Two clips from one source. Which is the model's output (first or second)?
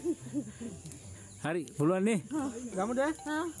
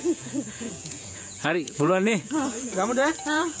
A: second